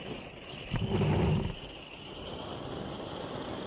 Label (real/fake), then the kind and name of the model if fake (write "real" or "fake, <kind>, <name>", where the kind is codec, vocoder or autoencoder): real